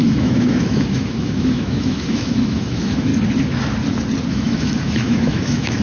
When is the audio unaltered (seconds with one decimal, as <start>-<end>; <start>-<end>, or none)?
3.1-4.3